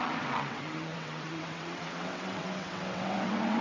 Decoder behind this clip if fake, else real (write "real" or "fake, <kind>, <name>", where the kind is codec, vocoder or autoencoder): fake, vocoder, WaveNeXt